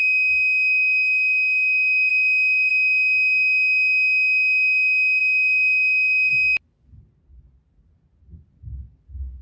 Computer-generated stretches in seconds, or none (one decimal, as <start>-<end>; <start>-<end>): 2.1-2.7; 5.2-6.3